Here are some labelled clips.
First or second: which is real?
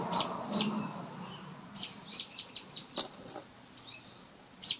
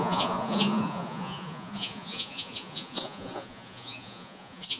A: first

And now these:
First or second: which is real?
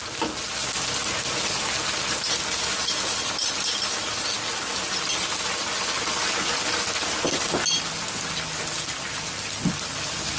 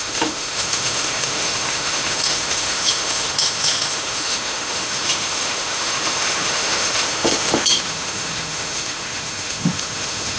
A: first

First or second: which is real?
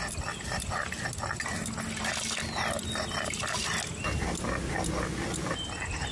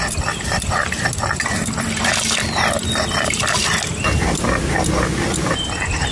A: first